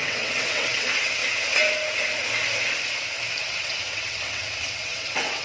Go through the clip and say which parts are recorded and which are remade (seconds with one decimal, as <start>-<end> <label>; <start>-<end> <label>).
0.0-1.2 remade; 1.2-3.4 recorded; 3.4-5.4 remade